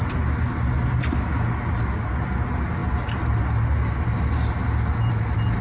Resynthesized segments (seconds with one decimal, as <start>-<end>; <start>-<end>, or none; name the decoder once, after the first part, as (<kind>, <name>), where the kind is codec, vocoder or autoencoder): none